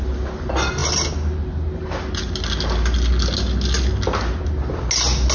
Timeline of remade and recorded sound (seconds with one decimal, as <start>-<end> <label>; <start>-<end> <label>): 0.0-5.3 recorded